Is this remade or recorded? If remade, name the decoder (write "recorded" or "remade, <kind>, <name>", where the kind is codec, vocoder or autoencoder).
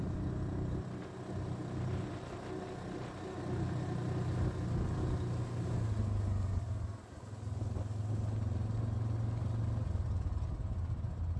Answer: recorded